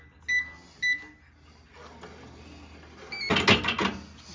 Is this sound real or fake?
real